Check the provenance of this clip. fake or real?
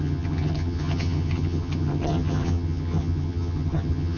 fake